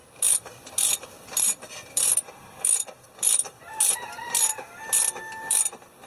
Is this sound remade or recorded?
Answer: remade